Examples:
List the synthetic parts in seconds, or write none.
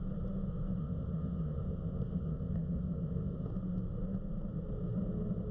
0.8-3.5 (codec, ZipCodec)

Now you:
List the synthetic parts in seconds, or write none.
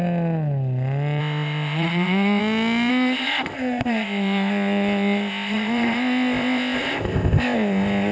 1.2-2.4 (codec, ZipCodec); 2.9-8.1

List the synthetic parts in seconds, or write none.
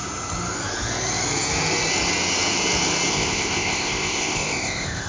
3.1-5.1 (codec, ZipCodec)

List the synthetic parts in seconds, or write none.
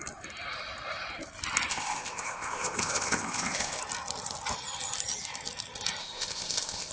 1.7-3.8 (codec, ZipCodec); 6.0-6.9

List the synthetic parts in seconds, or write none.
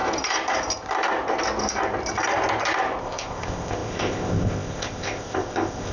3.0-5.9 (codec, ZipCodec)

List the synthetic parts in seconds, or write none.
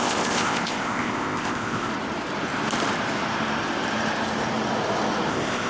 0.0-1.9 (codec, ZipCodec); 5.3-5.7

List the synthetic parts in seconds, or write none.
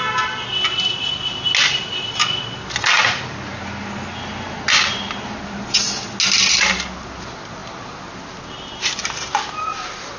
none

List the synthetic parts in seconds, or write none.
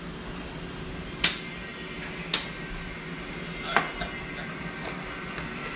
none